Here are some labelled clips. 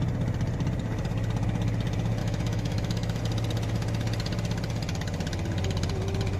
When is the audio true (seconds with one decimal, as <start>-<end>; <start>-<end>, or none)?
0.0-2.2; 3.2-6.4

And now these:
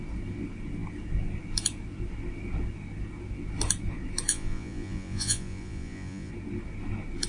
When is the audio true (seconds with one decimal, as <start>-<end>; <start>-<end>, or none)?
0.0-4.3; 6.3-7.3

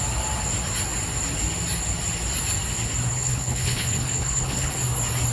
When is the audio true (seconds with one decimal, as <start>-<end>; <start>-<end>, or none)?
0.0-3.1; 4.7-5.3